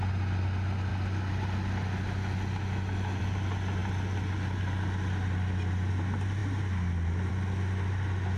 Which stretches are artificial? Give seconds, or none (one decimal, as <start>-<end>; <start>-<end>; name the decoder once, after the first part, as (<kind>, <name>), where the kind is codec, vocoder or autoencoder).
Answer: none

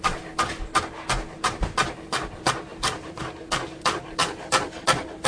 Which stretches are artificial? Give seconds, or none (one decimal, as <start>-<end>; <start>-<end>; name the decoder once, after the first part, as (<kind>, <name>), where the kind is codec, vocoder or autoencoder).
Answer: 2.7-3.2 (vocoder, BigVGAN v2)

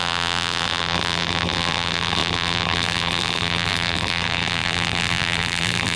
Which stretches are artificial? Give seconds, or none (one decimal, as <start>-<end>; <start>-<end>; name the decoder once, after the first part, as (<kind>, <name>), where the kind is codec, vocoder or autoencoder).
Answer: 0.0-6.0 (vocoder, BigVGAN v2)